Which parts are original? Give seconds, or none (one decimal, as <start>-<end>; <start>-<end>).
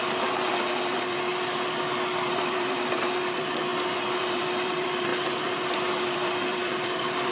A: 1.3-2.3; 3.7-4.2; 5.1-6.1